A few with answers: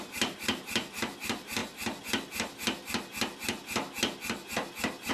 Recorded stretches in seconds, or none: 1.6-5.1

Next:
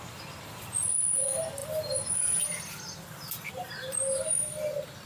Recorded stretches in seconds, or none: 0.0-1.6; 2.4-5.1

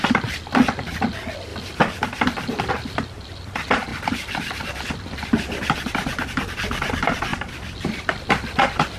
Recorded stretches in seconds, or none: 0.0-9.0

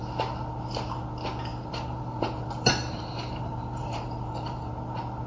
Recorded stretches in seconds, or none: 0.0-1.5; 4.7-5.3

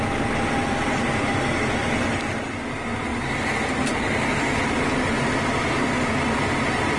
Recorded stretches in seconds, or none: 0.0-0.6; 1.3-1.8; 2.6-7.0

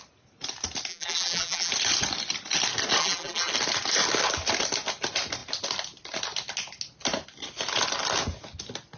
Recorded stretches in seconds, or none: 0.0-0.9; 1.7-3.0; 3.5-9.0